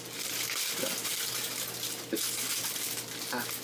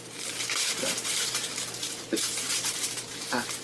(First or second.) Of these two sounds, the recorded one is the first